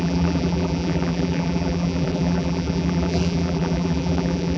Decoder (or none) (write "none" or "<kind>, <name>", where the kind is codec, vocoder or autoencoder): vocoder, BigVGAN v2